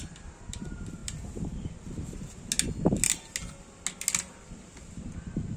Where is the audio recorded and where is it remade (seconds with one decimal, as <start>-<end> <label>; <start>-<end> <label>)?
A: 0.0-1.0 remade; 1.0-4.4 recorded; 4.4-5.6 remade